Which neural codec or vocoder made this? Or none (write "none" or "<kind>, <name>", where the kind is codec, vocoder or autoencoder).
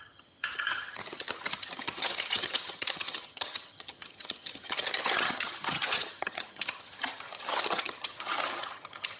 vocoder, HiFi-GAN